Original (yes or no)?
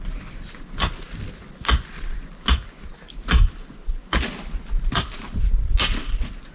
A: yes